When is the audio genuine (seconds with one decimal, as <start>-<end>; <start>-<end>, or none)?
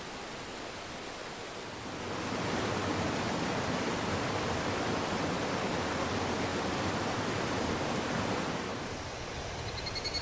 0.0-6.5; 7.6-10.2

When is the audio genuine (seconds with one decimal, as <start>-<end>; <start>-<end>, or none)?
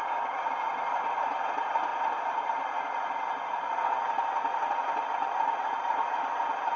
0.0-6.8